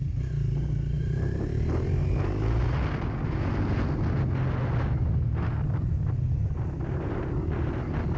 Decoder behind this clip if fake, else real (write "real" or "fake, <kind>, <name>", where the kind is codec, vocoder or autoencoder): real